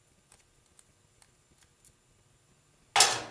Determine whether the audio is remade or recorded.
recorded